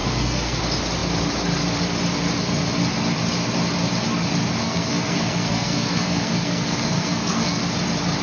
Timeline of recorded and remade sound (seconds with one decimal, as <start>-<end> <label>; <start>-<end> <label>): 0.0-0.6 remade; 0.6-4.6 recorded; 4.6-7.6 remade; 7.6-8.2 recorded